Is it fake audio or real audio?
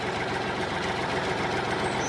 real